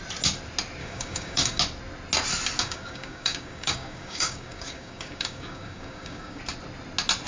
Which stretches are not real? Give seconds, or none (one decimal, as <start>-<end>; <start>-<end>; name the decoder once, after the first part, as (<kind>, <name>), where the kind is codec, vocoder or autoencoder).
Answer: 0.8-1.6 (codec, DAC); 2.6-6.4

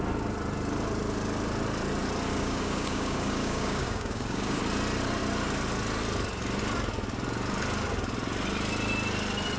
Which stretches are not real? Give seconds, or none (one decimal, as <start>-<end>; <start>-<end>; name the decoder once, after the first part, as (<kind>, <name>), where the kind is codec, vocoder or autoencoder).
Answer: 2.3-4.6 (codec, DAC)